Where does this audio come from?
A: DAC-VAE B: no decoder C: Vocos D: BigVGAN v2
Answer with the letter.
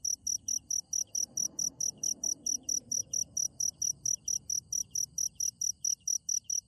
B